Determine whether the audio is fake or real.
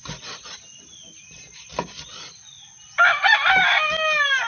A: real